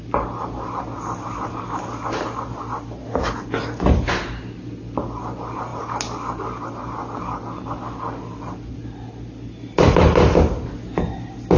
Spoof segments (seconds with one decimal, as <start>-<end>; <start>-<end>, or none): none